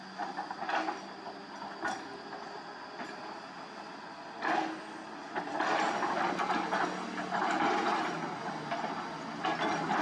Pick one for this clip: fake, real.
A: real